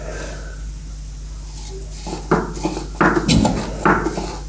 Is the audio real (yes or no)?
yes